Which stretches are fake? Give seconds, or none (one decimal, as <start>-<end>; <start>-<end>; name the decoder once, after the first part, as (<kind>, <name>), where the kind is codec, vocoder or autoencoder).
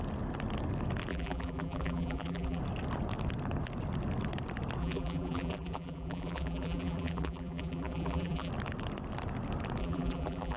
1.1-2.6 (vocoder, BigVGAN v2); 4.8-8.5; 9.8-10.6